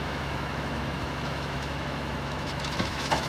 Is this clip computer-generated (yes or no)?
yes